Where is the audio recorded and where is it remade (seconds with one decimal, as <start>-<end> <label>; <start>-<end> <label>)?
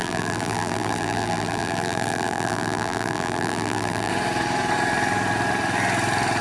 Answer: 0.0-4.1 remade; 4.1-6.4 recorded